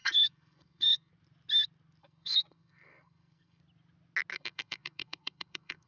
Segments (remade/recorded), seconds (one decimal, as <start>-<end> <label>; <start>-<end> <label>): 0.0-1.1 remade; 1.1-2.0 recorded; 2.0-3.6 remade; 3.6-4.3 recorded; 4.3-5.9 remade